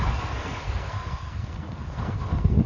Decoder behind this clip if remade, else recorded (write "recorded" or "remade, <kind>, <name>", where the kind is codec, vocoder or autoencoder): remade, codec, SNAC